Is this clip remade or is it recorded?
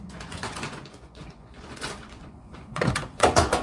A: remade